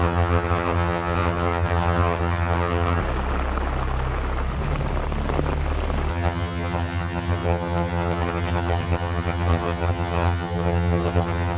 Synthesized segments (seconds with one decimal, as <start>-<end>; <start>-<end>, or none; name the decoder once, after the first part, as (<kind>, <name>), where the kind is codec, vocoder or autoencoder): 0.0-3.0 (vocoder, HiFi-GAN); 6.1-11.6